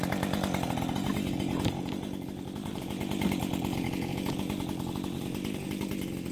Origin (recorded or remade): recorded